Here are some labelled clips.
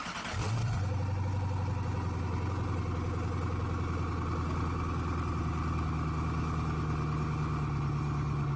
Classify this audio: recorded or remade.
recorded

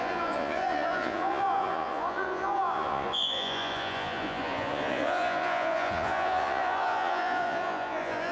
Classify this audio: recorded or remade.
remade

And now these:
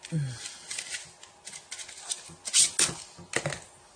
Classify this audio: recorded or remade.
recorded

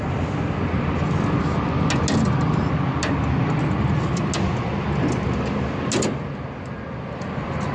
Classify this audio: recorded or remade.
recorded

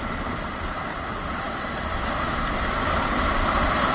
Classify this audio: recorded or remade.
recorded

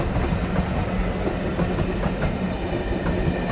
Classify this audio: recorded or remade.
recorded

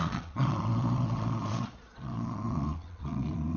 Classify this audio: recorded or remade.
remade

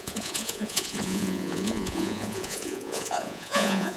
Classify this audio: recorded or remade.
remade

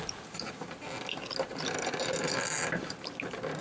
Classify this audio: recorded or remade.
recorded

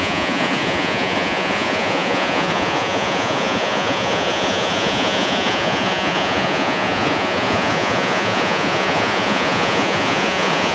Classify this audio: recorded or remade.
remade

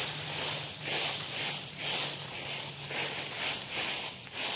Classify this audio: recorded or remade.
recorded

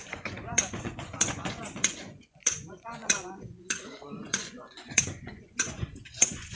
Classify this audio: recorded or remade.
remade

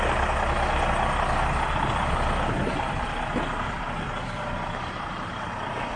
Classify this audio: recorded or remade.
recorded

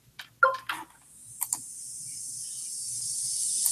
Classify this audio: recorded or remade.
recorded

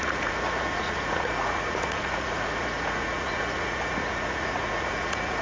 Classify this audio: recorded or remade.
remade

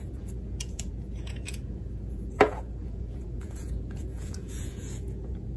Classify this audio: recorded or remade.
remade